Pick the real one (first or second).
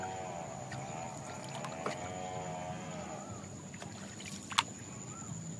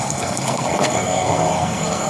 first